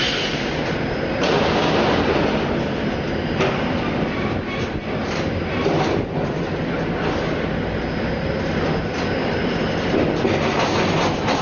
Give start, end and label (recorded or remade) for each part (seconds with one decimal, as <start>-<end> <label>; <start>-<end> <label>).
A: 0.0-4.8 recorded; 4.8-5.4 remade; 5.4-11.4 recorded